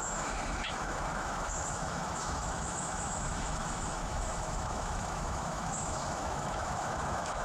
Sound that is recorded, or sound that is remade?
remade